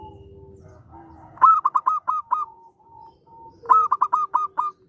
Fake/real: real